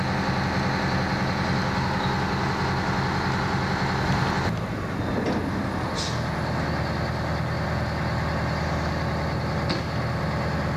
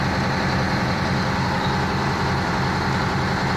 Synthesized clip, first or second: second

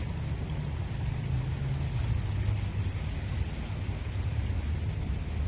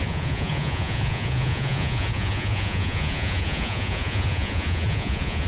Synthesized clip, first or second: second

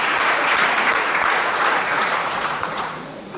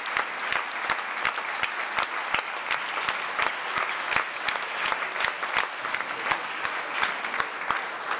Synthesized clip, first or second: first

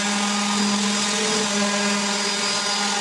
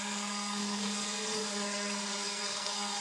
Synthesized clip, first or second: second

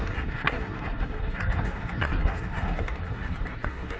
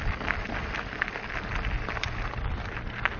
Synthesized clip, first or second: first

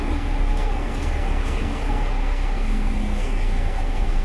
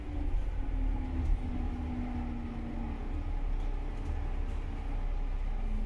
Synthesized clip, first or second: first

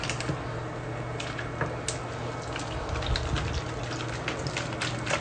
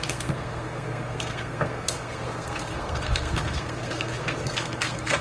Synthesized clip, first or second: second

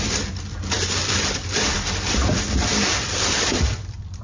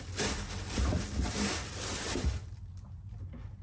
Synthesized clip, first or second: first